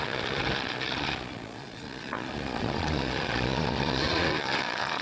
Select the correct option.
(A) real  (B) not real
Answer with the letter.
B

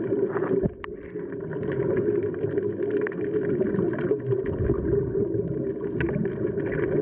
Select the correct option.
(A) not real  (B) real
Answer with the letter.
B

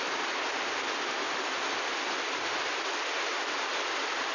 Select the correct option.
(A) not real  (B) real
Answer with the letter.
B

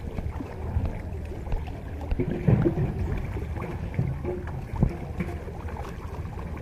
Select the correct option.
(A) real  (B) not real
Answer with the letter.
A